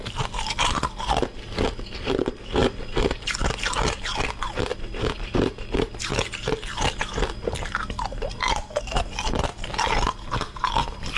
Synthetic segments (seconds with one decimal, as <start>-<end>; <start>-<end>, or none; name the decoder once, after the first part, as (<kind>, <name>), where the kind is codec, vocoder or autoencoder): none